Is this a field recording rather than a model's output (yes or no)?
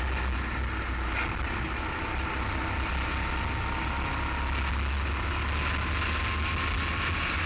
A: yes